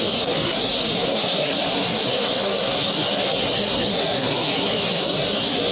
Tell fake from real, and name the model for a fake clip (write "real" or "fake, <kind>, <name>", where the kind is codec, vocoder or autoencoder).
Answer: fake, codec, SNAC